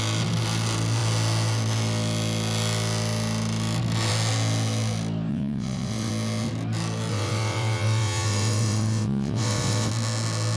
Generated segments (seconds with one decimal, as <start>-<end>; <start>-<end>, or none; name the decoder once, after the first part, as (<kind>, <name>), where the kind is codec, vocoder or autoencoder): 5.3-6.1 (vocoder, WaveNeXt); 7.1-9.9